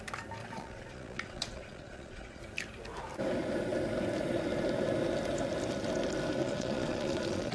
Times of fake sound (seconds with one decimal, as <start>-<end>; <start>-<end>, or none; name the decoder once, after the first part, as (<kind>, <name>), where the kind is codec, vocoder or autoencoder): 0.4-2.4 (vocoder, Vocos); 6.4-7.5